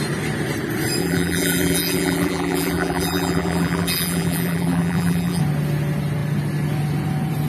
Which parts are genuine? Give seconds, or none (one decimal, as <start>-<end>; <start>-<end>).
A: 0.0-1.0; 5.4-7.5